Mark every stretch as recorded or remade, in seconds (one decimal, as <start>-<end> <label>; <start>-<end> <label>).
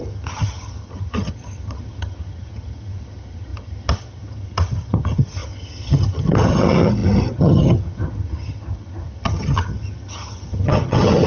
0.0-11.3 remade